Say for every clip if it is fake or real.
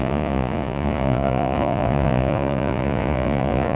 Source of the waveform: fake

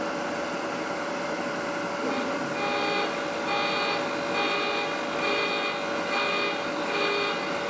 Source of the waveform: real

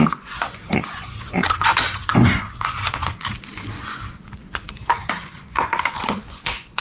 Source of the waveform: fake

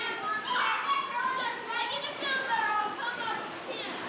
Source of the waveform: real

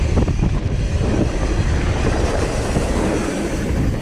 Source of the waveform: real